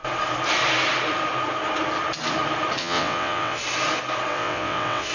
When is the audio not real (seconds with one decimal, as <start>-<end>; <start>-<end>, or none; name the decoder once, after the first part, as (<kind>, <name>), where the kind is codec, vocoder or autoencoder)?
2.8-3.6 (vocoder, WaveNeXt); 4.3-5.1